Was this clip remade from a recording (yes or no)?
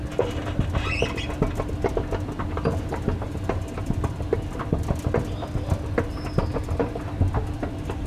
no